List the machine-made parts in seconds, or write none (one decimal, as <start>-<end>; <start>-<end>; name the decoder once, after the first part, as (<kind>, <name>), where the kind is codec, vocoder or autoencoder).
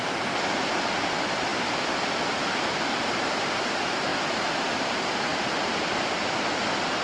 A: none